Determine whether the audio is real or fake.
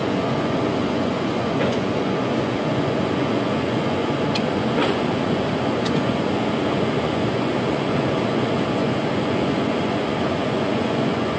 fake